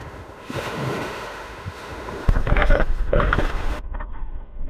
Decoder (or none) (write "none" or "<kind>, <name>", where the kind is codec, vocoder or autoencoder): autoencoder, DAC-VAE